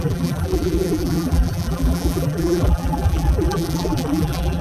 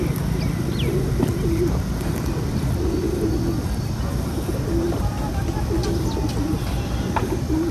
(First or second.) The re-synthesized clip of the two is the first